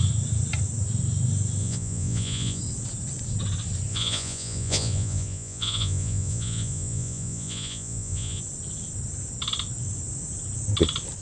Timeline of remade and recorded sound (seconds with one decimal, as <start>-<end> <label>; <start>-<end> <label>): 0.0-1.6 recorded; 1.6-2.6 remade; 2.6-3.9 recorded; 3.9-8.4 remade; 8.4-11.2 recorded

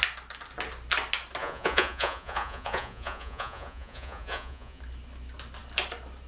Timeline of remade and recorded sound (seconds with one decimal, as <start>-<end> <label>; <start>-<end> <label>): 0.0-1.4 recorded; 1.4-4.8 remade; 4.8-6.3 recorded

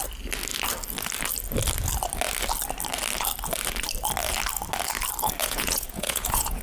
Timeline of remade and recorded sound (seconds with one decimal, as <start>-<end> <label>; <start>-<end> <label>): 0.0-5.4 recorded; 5.4-6.6 remade